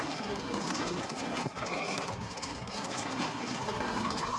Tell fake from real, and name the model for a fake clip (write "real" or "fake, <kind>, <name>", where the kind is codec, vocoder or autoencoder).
fake, codec, SNAC